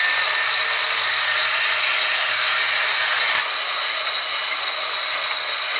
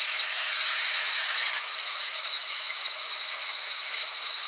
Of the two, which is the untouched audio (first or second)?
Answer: first